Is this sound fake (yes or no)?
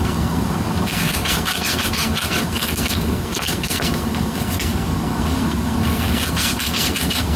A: yes